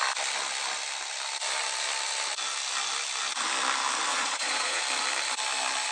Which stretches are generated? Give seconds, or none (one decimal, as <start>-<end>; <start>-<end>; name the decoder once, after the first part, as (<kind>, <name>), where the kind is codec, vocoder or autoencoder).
4.1-4.8 (vocoder, Vocos)